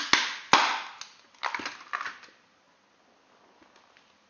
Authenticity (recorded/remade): recorded